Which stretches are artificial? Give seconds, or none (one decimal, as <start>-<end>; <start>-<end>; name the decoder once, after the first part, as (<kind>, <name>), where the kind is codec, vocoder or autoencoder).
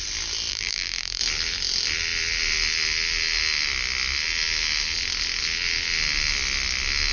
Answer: 0.5-1.2 (vocoder, BigVGAN v2)